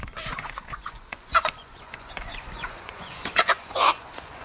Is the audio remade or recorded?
remade